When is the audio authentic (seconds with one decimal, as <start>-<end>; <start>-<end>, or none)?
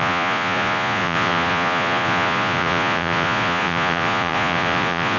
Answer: none